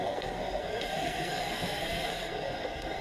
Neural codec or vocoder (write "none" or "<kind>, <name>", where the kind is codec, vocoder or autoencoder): codec, SNAC